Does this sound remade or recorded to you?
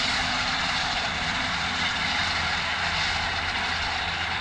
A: remade